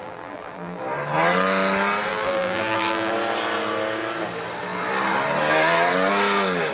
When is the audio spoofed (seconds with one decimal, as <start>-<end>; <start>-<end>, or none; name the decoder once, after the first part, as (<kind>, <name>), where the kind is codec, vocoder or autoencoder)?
0.0-0.8 (vocoder, BigVGAN v2); 2.1-3.1